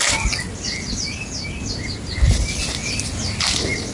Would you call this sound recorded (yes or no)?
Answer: yes